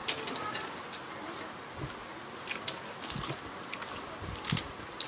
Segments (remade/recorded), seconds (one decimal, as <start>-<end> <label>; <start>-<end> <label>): 0.0-5.1 recorded